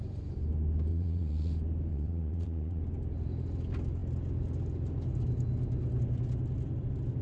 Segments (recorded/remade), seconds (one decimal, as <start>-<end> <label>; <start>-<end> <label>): 0.0-0.9 recorded; 0.9-1.5 remade; 1.5-1.9 recorded; 1.9-2.8 remade; 2.8-7.2 recorded